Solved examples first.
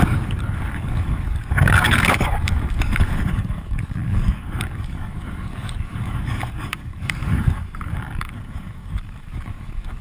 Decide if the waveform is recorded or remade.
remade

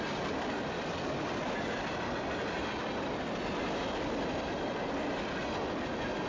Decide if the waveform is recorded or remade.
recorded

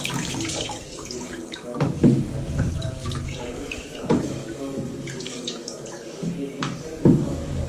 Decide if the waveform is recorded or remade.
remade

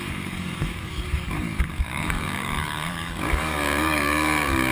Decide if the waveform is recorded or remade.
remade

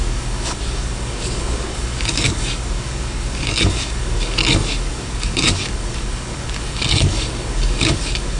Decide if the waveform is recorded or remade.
remade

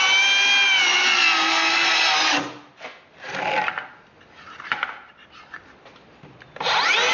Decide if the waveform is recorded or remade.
recorded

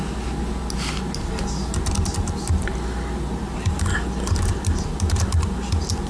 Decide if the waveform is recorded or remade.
recorded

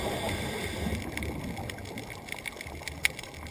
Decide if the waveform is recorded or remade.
recorded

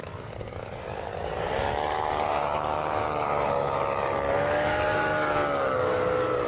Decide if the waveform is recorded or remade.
remade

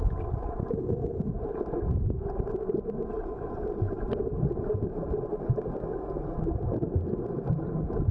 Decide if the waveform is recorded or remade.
recorded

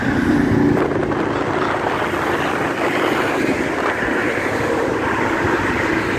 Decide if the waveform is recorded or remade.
recorded